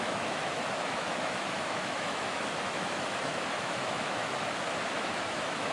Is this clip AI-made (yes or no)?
yes